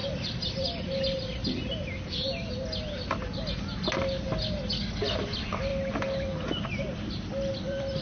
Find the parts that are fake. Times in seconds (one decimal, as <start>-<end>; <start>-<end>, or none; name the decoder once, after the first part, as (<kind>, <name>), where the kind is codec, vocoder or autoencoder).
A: 0.0-1.4 (vocoder, BigVGAN v2); 5.0-5.7; 7.5-8.0